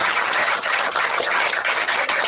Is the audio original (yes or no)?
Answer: no